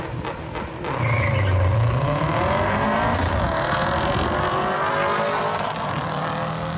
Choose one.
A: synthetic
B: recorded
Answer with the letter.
B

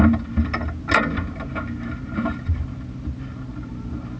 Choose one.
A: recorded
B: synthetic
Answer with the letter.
A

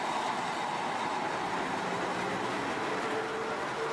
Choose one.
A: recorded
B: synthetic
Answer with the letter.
A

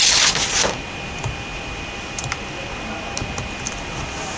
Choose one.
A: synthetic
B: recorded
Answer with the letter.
B